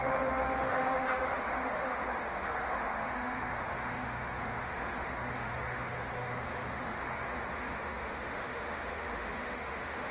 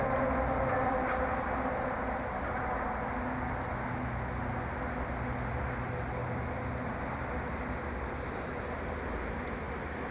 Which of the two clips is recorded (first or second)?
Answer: second